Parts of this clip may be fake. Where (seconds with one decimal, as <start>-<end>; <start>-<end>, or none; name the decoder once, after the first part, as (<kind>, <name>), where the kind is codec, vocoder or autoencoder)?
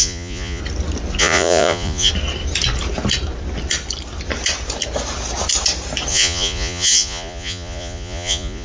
0.0-0.6 (vocoder, Vocos); 1.2-2.1; 6.1-8.6